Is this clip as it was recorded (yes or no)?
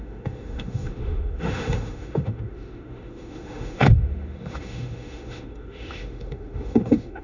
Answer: no